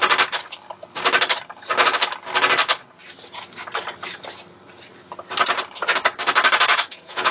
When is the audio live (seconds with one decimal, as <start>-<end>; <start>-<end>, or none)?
0.0-6.7